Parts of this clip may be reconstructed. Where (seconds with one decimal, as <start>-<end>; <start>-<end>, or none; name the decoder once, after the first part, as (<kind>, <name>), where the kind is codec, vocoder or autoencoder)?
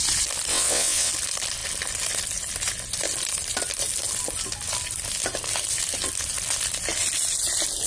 0.5-1.1 (vocoder, WaveNeXt)